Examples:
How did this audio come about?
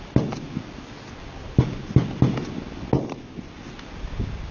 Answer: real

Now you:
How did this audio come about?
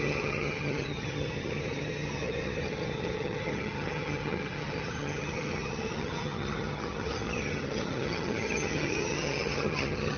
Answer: fake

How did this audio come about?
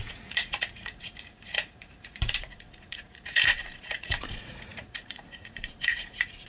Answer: fake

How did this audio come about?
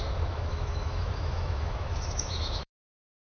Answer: fake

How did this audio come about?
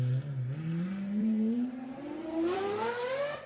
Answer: fake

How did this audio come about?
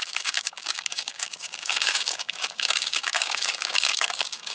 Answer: fake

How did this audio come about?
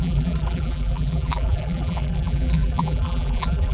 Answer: fake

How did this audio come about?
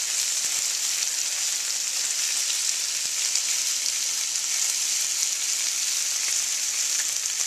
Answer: real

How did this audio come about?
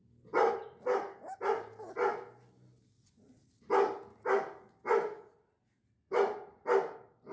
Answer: real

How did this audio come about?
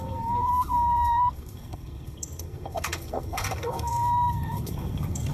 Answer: fake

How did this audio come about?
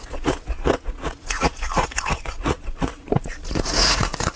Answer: fake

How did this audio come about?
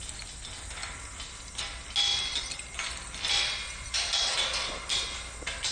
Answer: real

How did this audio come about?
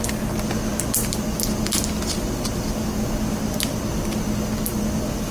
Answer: real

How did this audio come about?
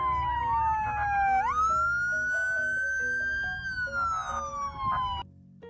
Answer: real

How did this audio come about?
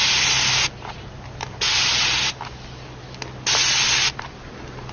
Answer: real